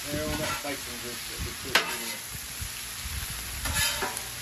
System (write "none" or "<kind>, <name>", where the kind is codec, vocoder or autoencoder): none